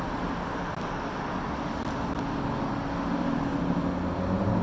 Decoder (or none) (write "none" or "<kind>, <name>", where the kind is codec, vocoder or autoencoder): none